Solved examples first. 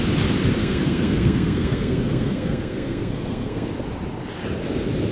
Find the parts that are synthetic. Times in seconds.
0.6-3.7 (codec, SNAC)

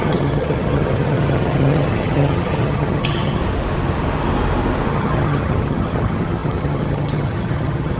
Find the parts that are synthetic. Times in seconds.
0.0-3.4 (vocoder, HiFi-GAN); 4.9-8.0